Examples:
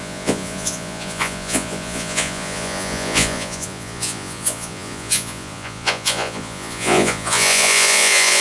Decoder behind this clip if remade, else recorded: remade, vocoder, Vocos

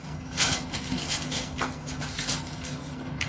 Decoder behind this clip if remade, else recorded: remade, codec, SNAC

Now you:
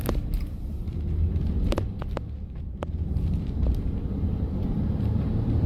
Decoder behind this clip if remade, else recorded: recorded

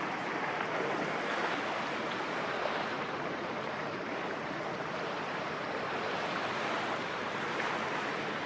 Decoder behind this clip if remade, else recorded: remade, vocoder, BigVGAN v2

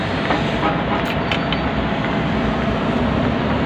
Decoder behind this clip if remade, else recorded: recorded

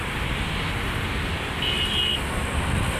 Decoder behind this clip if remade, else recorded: recorded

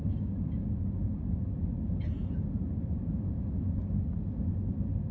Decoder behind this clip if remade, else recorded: recorded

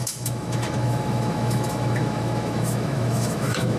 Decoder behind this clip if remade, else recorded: remade, autoencoder, DAC-VAE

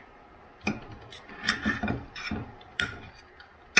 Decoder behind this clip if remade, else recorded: recorded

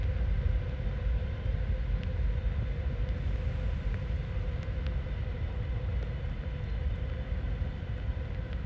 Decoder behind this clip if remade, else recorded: recorded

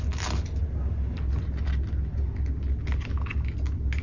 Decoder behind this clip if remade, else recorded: recorded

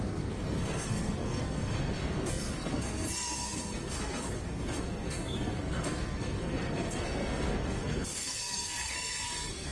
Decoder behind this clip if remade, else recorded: remade, codec, SNAC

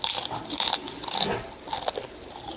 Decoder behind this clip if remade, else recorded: recorded